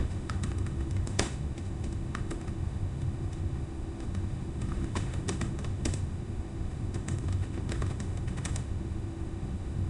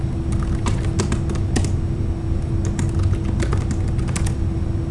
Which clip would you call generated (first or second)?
first